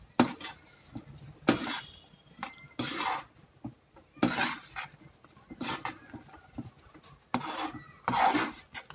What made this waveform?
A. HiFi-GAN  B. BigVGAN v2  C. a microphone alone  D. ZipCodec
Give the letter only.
C